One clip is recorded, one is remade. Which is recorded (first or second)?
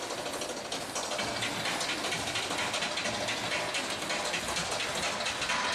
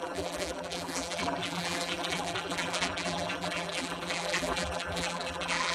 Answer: first